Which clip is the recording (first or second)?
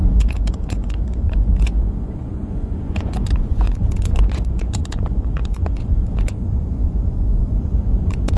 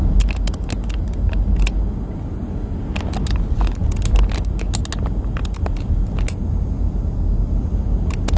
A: second